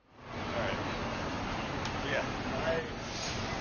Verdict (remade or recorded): recorded